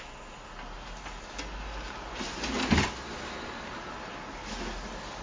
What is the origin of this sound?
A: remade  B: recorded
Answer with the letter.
B